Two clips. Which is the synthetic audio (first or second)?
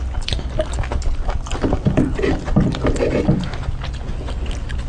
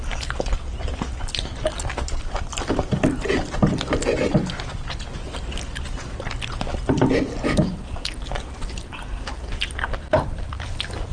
second